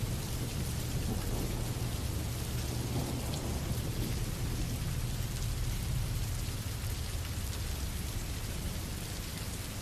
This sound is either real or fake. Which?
real